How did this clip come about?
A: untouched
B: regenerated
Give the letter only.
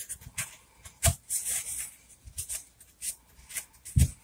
A